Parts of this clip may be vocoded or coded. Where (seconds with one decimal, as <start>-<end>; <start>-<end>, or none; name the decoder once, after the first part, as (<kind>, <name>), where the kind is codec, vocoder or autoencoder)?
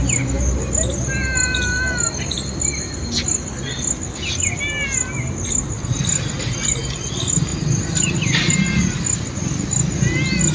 none